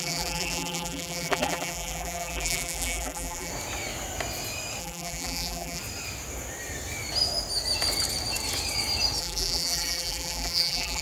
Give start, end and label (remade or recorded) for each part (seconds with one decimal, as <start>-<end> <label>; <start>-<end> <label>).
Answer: 0.0-3.5 remade; 3.5-4.8 recorded; 4.8-5.8 remade; 5.8-9.2 recorded; 9.2-11.0 remade